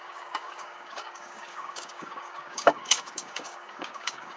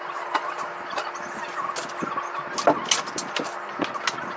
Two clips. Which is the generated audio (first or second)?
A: first